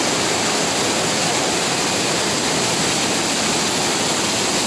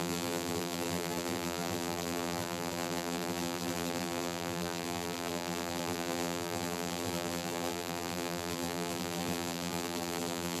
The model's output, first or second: second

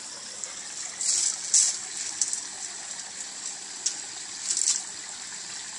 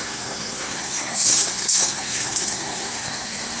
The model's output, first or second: second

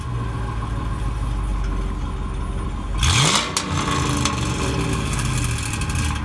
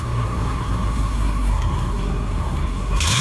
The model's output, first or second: second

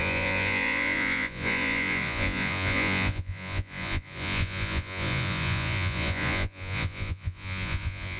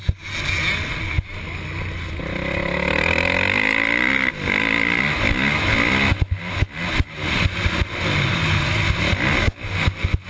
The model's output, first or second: first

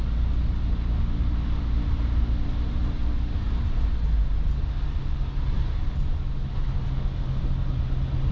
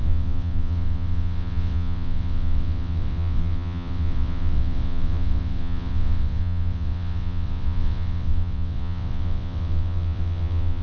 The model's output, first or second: second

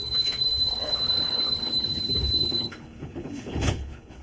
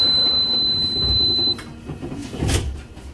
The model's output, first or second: first